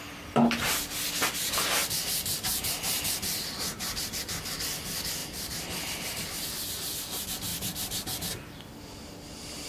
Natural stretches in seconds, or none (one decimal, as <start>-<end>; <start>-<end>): 0.0-1.8; 4.2-5.2; 6.4-7.5; 8.3-9.7